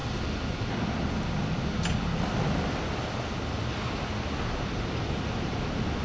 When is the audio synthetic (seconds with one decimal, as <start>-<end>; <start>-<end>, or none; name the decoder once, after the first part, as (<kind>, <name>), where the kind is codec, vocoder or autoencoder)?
none